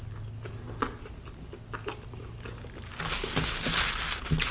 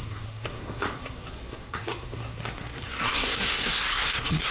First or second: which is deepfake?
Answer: second